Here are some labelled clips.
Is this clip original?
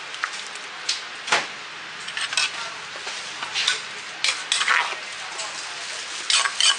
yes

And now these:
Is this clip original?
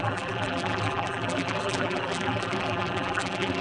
no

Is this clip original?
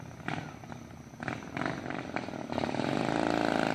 yes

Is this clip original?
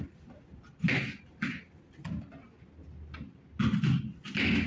yes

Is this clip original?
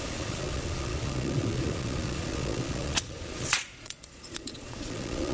no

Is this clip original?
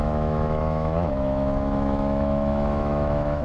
no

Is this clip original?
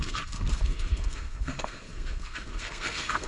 no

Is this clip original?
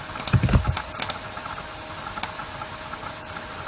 yes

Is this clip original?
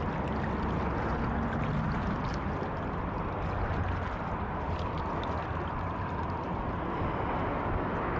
yes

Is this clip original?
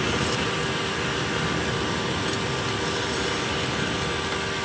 yes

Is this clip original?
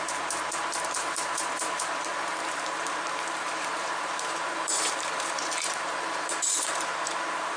no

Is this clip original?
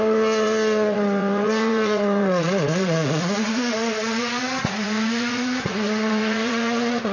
no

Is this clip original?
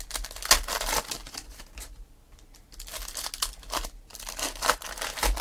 yes